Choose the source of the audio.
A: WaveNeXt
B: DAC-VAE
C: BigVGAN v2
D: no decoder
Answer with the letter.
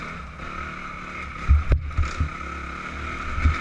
D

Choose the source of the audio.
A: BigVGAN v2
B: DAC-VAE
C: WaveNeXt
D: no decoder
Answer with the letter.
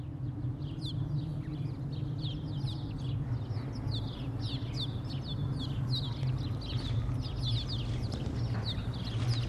D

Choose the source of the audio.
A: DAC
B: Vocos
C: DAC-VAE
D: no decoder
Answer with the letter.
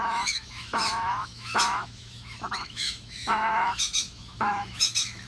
C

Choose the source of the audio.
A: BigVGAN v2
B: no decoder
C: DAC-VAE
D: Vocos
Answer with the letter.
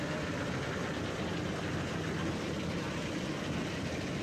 B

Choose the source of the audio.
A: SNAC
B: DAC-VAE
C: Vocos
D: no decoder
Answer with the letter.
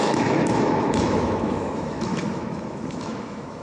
B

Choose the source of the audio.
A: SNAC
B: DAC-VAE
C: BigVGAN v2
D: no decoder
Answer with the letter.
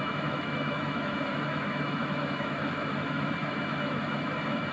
B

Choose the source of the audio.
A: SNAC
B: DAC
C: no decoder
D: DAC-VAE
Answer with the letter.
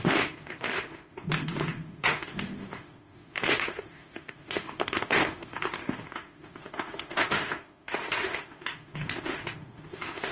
D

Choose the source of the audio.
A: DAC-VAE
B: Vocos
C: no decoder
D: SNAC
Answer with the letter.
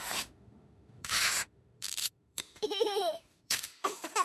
A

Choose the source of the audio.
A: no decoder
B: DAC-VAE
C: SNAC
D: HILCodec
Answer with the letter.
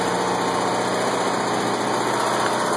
A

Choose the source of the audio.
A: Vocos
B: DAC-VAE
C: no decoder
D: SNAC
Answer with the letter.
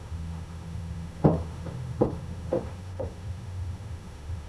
B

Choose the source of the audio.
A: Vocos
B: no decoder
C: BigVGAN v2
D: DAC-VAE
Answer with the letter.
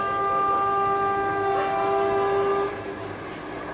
B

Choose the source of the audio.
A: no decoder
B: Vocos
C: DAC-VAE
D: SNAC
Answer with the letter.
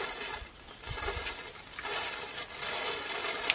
A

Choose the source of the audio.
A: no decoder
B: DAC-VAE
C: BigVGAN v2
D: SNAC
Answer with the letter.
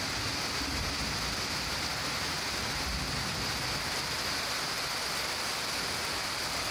A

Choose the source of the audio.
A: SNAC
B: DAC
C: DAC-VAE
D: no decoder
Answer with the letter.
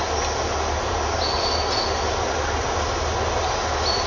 D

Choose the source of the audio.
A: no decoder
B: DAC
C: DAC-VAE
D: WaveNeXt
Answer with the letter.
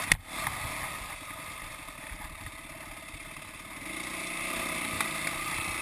A